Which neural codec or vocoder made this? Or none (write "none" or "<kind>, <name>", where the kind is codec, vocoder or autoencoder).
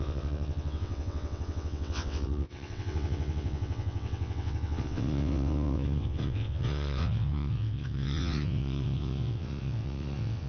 vocoder, WaveNeXt